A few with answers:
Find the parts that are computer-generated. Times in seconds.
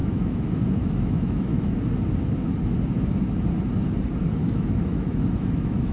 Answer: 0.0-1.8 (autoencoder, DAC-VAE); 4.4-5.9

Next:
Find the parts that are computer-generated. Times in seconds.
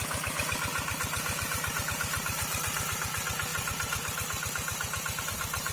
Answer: none